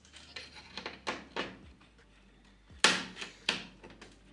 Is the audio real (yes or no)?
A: yes